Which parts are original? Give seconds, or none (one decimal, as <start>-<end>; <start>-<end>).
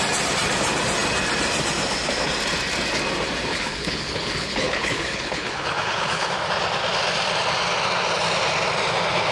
0.0-3.5; 6.3-9.3